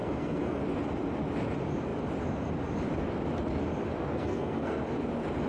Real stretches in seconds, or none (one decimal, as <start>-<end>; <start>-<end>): 0.6-4.0; 4.8-5.5